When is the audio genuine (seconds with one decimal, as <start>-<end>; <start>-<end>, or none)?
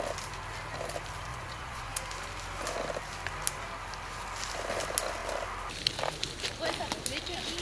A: 0.0-1.3; 1.9-7.6